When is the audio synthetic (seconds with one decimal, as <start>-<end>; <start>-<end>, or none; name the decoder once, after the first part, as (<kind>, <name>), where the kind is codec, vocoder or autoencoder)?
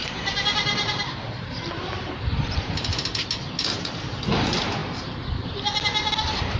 0.0-2.9 (vocoder, BigVGAN v2); 3.7-6.6